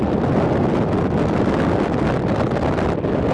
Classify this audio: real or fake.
real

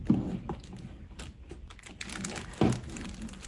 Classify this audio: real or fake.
real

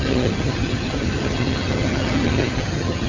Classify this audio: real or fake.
fake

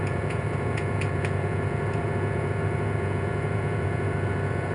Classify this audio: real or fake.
fake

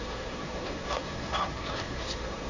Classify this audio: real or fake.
fake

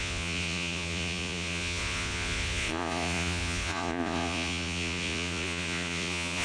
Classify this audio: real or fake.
fake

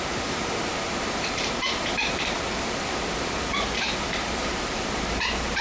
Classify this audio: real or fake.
fake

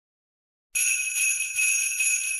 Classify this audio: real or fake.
real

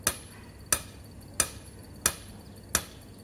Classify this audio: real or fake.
real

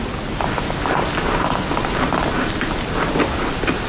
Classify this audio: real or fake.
real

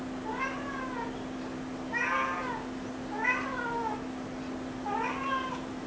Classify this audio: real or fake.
real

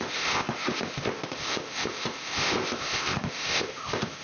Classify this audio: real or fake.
fake